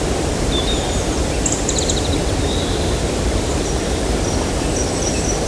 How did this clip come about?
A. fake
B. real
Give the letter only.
B